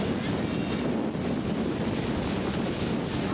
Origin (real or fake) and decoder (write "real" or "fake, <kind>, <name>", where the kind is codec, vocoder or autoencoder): real